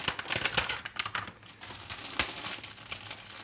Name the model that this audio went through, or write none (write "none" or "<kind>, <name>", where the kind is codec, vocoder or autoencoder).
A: none